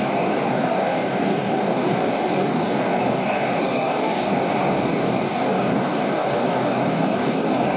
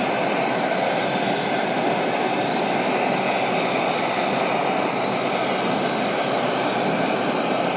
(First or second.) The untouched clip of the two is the second